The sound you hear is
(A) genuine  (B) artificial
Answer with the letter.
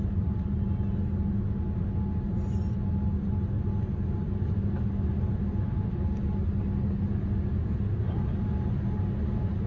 A